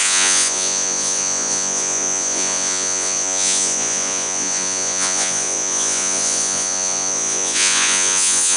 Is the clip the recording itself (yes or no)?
no